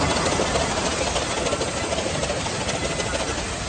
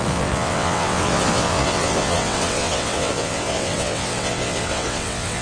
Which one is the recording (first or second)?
first